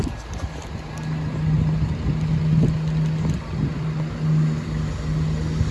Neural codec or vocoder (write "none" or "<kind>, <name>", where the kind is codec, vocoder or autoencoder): none